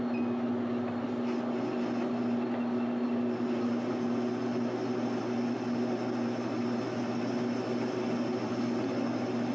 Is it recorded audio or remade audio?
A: recorded